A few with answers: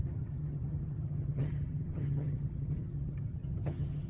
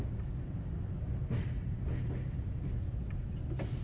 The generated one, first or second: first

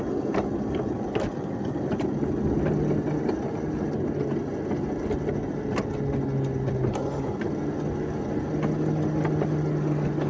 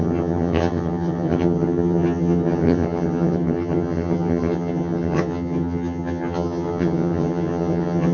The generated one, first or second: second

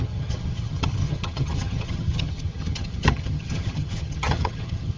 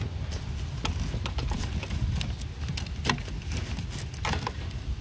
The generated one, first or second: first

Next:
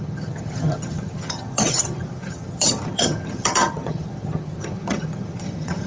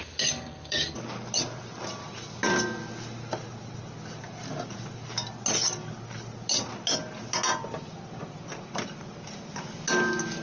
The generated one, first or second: first